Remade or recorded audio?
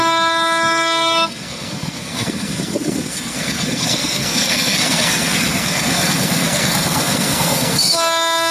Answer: remade